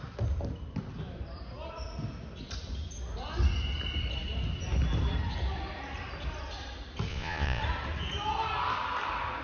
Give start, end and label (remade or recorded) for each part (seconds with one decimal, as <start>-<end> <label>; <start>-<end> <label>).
0.0-7.1 recorded; 7.1-7.6 remade; 7.6-9.4 recorded